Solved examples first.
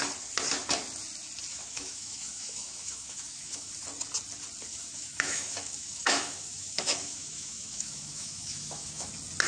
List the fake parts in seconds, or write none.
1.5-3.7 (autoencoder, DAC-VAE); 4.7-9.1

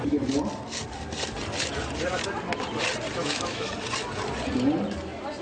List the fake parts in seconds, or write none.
3.2-3.7 (autoencoder, DAC-VAE)

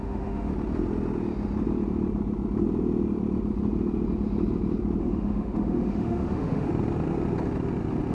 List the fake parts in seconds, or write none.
0.0-0.5 (autoencoder, DAC-VAE); 5.0-6.7